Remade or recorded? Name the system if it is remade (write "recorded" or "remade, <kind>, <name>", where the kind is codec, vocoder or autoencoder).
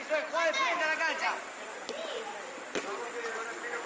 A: recorded